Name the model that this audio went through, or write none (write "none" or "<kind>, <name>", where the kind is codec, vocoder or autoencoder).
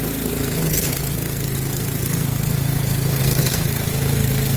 codec, SNAC